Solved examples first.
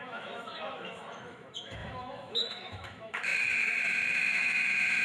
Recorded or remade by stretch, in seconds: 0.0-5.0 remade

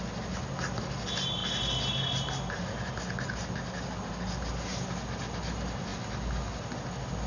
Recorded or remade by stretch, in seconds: 0.0-7.3 recorded

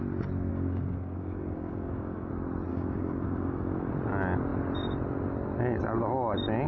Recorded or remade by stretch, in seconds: 0.0-0.5 recorded; 0.5-2.3 remade; 2.3-2.7 recorded; 2.7-3.9 remade; 3.9-6.7 recorded

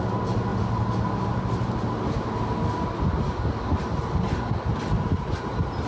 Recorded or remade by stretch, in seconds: 0.0-5.9 recorded

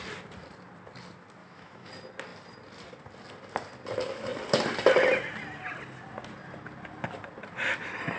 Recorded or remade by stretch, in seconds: 0.0-1.4 recorded; 1.4-1.9 remade; 1.9-8.2 recorded

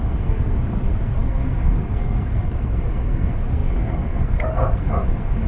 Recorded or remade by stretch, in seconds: 0.0-5.5 remade

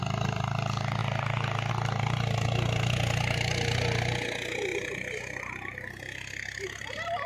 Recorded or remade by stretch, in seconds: 0.0-7.3 recorded